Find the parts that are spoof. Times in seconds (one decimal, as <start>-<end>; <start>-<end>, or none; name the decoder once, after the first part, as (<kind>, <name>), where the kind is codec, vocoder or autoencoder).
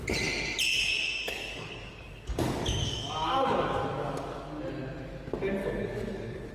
0.7-4.6 (codec, DAC); 5.6-6.5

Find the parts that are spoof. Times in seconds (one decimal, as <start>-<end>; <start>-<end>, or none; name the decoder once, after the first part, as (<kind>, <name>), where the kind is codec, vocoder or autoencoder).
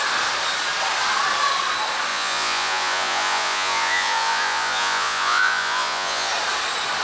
2.1-6.3 (vocoder, Vocos)